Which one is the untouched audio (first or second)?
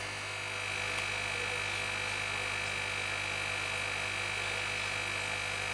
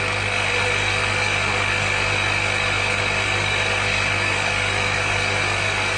first